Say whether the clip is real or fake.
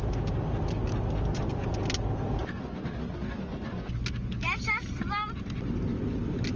real